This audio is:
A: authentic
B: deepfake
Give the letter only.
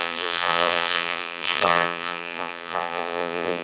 B